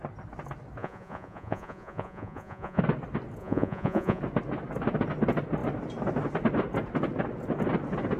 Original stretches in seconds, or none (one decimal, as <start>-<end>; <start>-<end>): 0.0-0.8; 2.8-3.4; 4.2-8.2